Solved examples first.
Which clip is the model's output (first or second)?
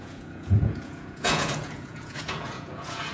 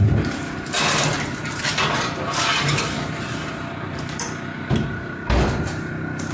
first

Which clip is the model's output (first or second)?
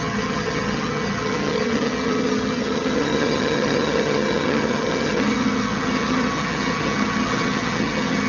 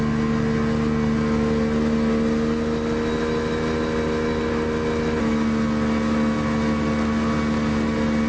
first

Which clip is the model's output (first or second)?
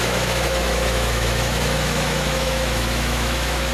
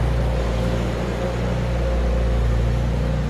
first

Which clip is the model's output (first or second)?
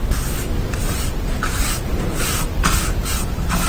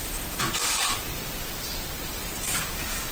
second